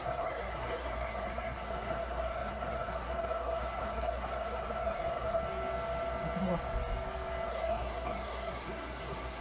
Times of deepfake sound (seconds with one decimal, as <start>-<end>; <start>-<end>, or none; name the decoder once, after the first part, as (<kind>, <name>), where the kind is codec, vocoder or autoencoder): 0.0-5.4 (codec, SNAC); 7.5-9.4